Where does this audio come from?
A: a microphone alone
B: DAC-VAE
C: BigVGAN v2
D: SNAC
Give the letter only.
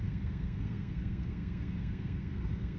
D